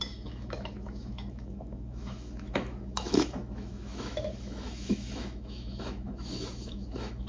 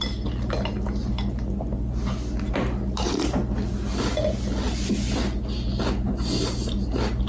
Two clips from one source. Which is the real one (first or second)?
second